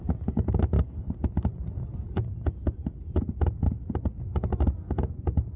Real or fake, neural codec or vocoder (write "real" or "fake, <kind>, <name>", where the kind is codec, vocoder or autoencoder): real